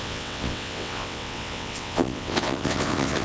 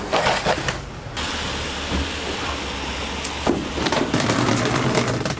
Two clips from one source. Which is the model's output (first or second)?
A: first